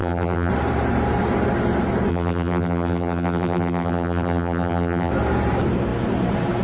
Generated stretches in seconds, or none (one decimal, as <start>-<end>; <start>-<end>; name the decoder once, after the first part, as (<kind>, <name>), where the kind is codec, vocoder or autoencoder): 0.0-0.5 (vocoder, BigVGAN v2); 2.1-5.1